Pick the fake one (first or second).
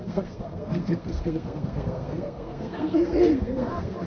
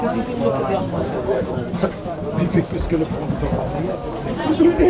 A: first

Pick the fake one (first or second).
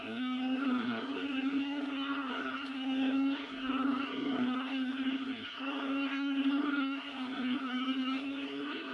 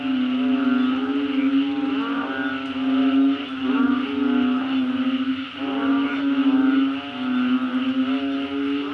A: first